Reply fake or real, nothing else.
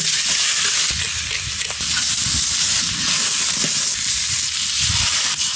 real